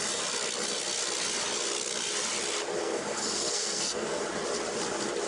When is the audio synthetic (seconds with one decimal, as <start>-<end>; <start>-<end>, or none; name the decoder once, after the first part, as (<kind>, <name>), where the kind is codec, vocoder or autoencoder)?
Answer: 2.8-4.2 (codec, SNAC)